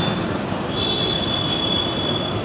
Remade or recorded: recorded